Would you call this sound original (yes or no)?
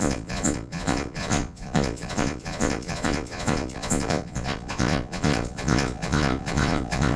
no